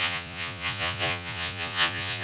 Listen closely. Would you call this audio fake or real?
fake